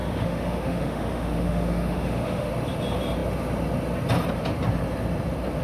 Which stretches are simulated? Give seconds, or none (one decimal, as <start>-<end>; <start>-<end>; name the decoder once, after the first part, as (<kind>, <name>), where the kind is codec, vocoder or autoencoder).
0.0-2.5 (autoencoder, DAC-VAE)